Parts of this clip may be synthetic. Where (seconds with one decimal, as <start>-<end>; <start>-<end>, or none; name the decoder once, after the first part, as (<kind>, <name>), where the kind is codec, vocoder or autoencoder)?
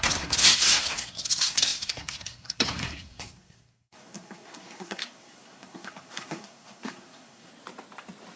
0.0-7.5 (codec, SNAC)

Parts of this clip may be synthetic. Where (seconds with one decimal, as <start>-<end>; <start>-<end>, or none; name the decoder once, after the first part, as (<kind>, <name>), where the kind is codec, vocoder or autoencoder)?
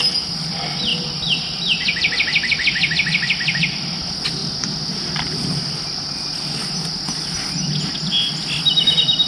none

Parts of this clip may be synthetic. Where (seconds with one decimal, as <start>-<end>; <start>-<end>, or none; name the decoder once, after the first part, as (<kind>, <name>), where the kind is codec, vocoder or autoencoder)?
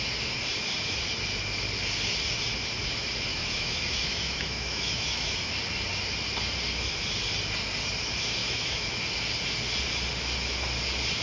3.3-5.5 (autoencoder, DAC-VAE); 8.4-9.0